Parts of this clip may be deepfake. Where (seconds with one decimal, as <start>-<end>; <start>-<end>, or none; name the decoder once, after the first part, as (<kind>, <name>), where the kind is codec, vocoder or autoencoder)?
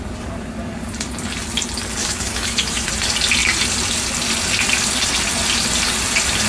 2.0-2.9 (autoencoder, DAC-VAE)